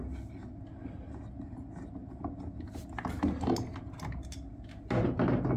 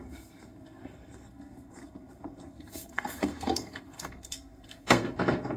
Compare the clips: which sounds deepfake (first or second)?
second